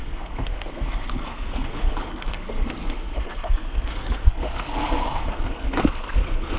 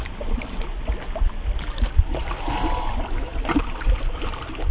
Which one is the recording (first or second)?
second